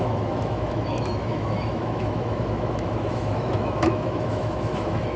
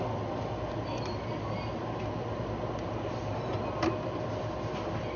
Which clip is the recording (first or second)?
second